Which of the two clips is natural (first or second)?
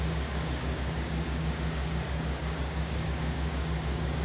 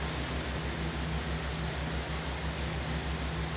second